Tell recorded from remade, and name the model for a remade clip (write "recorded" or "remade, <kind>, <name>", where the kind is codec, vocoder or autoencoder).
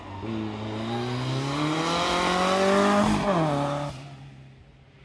recorded